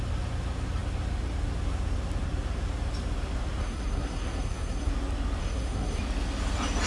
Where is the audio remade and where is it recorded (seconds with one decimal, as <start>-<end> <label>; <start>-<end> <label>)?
0.0-3.6 recorded; 3.6-4.9 remade; 4.9-5.4 recorded; 5.4-6.0 remade; 6.0-6.9 recorded